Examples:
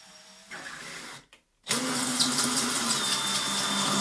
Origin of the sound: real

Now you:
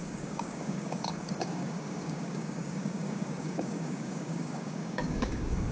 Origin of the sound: fake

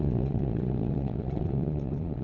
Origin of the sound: fake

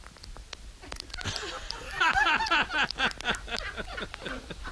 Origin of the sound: real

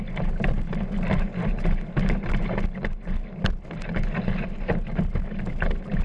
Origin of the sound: real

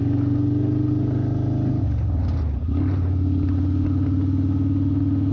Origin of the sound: real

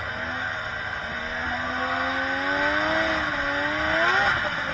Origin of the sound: real